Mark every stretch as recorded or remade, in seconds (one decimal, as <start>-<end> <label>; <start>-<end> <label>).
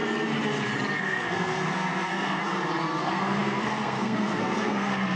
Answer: 0.0-1.0 recorded; 1.0-2.4 remade; 2.4-3.0 recorded; 3.0-5.2 remade